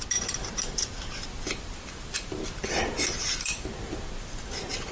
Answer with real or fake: fake